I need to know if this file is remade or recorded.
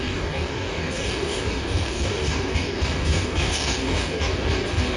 remade